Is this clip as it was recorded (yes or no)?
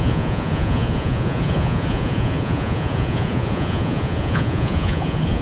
no